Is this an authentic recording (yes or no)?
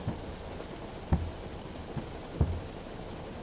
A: yes